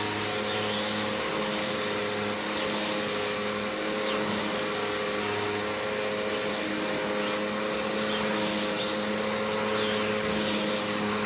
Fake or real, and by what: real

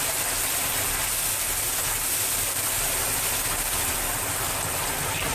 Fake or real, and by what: real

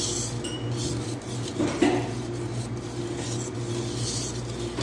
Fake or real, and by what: real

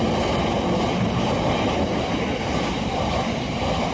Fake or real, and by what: real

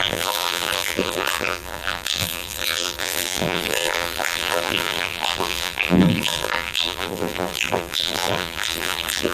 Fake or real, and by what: fake, vocoder, BigVGAN v2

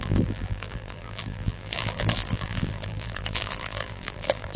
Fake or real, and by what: fake, vocoder, BigVGAN v2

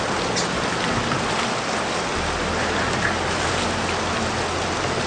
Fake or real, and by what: real